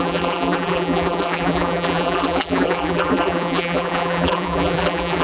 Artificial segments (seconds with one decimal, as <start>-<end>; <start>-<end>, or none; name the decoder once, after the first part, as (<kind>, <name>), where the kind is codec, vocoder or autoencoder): 0.0-5.2 (vocoder, BigVGAN v2)